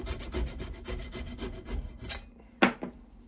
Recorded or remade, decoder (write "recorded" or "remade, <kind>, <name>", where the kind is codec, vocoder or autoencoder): recorded